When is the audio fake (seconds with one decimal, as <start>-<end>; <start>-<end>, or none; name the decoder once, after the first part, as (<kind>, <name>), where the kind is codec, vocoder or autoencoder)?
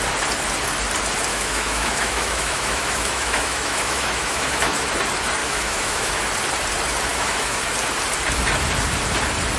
1.3-4.9 (autoencoder, DAC-VAE); 5.4-6.2; 7.1-7.6